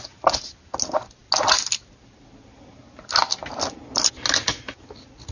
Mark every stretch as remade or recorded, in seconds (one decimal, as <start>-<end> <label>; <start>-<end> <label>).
0.0-5.3 recorded